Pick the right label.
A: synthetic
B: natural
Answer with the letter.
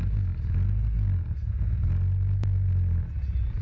B